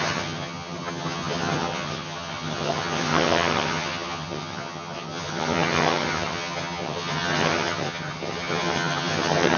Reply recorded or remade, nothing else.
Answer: remade